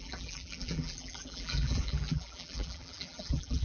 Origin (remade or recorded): remade